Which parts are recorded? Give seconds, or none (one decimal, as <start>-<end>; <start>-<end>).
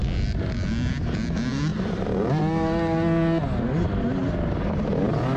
0.0-1.7; 2.4-5.4